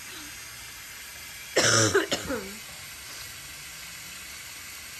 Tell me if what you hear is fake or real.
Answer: real